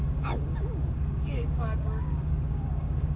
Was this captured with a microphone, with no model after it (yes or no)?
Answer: no